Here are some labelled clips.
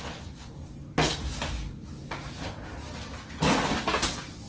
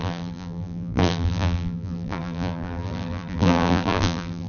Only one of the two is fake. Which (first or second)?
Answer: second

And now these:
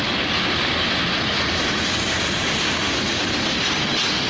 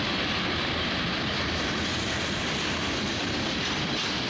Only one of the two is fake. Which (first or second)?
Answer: second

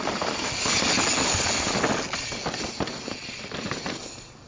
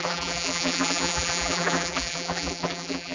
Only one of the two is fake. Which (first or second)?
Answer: second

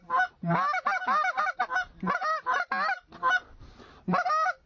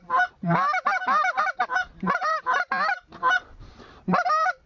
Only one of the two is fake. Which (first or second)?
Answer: second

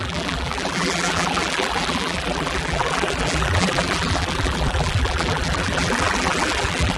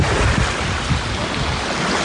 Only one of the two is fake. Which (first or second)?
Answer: first